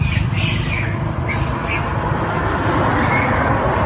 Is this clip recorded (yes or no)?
yes